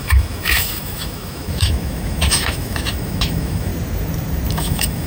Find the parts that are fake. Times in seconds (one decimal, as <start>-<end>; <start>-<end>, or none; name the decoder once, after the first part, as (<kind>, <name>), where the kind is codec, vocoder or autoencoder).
0.0-3.7 (autoencoder, DAC-VAE); 4.5-5.1

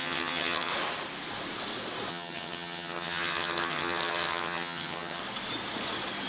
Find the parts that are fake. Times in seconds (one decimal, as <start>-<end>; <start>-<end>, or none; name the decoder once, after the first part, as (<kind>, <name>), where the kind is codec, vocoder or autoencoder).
0.0-0.7 (vocoder, HiFi-GAN); 2.1-5.2